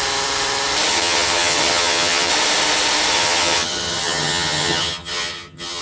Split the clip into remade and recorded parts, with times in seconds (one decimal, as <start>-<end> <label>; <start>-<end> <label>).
0.0-0.9 recorded; 0.9-2.3 remade; 2.3-3.1 recorded; 3.1-5.8 remade